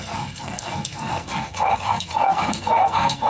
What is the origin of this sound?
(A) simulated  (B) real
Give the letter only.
A